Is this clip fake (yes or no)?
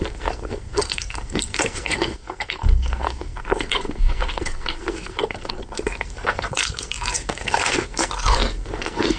yes